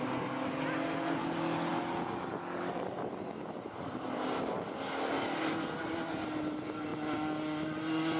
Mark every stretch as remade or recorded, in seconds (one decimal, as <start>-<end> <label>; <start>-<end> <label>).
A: 0.0-8.2 recorded